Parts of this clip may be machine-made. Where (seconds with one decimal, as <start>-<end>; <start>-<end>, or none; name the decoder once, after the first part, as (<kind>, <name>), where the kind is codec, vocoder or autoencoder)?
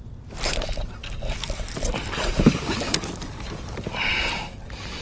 none